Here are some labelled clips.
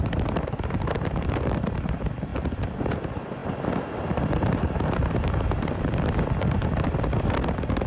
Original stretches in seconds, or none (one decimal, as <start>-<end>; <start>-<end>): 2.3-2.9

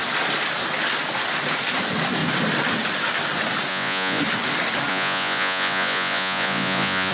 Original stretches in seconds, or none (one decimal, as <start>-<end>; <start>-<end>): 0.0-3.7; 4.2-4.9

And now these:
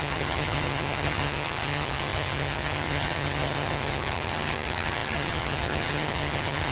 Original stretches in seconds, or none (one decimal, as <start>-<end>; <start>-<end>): none

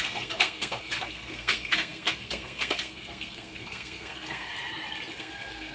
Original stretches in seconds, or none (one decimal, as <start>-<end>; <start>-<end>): 4.5-5.2